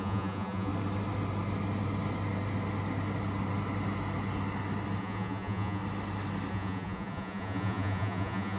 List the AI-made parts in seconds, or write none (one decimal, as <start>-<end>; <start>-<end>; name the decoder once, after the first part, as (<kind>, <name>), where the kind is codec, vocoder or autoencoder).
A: 0.0-0.7 (vocoder, Vocos); 5.0-5.8; 6.5-8.6

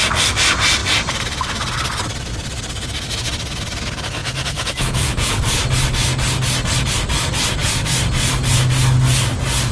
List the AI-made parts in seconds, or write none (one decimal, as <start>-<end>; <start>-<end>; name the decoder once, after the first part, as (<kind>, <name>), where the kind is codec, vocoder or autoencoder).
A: 4.2-5.4 (vocoder, Vocos)

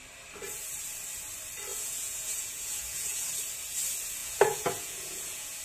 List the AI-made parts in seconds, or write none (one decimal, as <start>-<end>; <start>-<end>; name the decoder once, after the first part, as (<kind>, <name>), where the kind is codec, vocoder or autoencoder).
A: 1.7-3.3 (vocoder, Vocos); 4.2-5.6

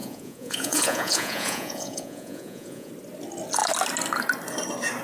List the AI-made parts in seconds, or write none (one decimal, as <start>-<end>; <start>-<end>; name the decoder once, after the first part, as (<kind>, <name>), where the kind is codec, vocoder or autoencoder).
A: 0.0-2.9 (vocoder, Vocos)

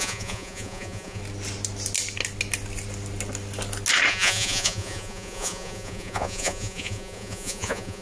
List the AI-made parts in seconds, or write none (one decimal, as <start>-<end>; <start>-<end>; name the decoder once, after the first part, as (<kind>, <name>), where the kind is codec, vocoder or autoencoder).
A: 0.0-1.2 (vocoder, Vocos); 4.1-8.0

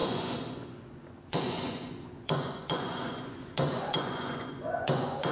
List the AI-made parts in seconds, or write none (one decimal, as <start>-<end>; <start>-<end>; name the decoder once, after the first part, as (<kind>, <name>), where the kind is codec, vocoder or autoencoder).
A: 0.0-5.3 (vocoder, Vocos)

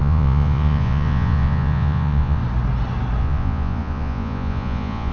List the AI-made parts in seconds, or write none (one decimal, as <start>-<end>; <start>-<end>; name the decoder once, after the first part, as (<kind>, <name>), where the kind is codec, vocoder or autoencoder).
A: 0.0-2.4 (vocoder, Vocos); 3.2-5.1

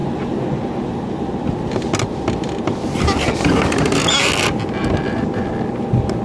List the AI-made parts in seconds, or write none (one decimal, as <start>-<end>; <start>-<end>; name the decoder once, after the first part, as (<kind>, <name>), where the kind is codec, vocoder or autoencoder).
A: none